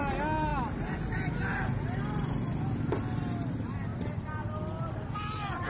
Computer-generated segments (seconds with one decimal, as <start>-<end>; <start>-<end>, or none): none